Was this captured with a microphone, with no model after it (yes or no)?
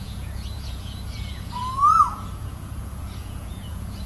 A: no